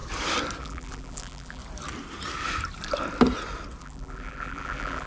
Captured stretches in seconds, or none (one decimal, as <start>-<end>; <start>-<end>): 0.0-0.6; 1.6-3.8